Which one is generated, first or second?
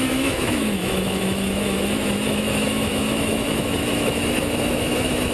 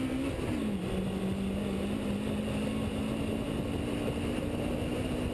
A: first